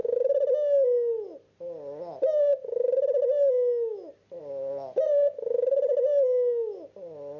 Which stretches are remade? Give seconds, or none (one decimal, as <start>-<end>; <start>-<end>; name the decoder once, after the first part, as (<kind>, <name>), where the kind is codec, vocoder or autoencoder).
none